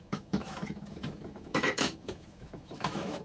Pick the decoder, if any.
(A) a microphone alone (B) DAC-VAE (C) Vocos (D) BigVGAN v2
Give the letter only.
B